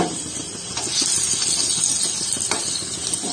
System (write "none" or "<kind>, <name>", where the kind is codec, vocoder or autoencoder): none